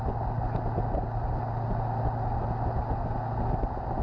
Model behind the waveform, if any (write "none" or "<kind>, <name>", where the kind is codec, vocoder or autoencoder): none